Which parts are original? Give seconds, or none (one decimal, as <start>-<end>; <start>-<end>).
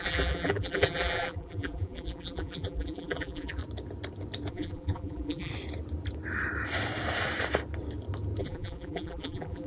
3.6-4.5; 5.5-8.4